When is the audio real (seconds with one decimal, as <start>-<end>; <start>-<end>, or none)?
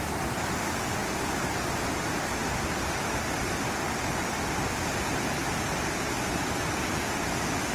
0.0-7.7